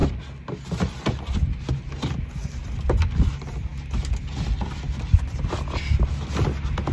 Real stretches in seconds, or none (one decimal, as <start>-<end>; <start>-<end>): 0.0-6.9